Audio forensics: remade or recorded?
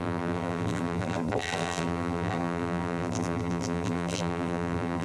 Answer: remade